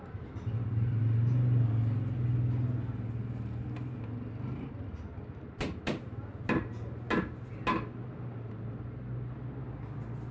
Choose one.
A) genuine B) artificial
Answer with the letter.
A